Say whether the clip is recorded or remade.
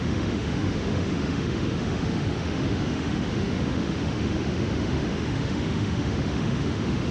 remade